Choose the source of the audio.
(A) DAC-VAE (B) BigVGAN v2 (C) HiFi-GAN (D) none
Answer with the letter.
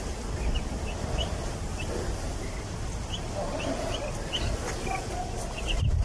B